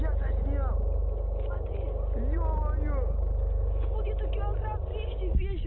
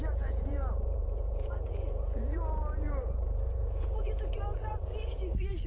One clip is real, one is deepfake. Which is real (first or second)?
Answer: first